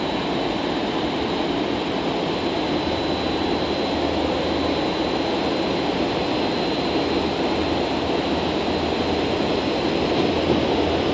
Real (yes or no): yes